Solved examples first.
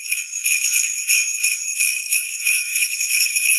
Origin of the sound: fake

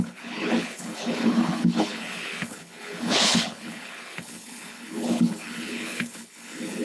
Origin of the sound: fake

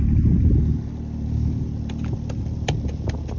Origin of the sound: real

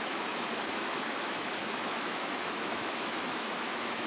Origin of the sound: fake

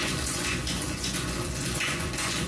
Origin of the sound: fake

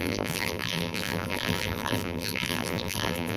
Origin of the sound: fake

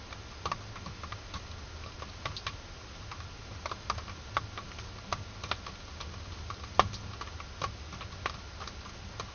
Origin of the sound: real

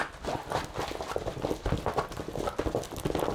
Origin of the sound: real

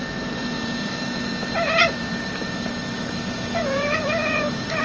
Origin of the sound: fake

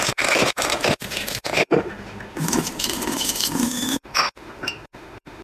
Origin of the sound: fake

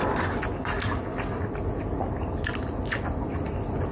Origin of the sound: real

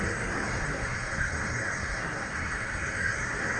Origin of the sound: fake